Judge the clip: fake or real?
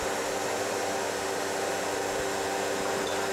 real